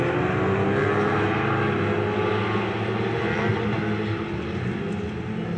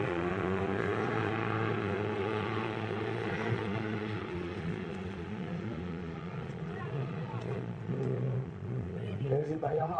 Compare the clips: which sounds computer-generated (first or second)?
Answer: second